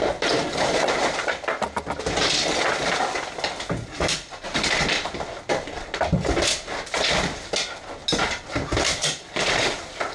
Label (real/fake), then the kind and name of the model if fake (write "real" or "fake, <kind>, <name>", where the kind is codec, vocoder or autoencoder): real